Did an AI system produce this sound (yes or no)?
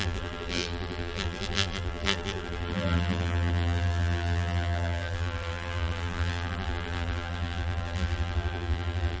yes